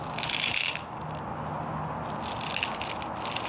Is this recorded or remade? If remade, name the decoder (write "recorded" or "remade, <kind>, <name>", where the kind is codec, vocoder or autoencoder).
recorded